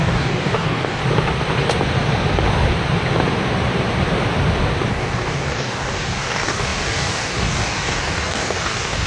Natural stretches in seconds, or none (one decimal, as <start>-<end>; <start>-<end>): 1.0-4.9